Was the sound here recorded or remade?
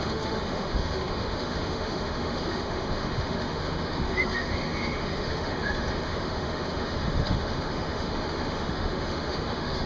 remade